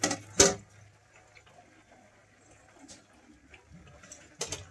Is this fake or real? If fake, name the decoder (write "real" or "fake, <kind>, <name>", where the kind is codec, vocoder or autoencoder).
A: real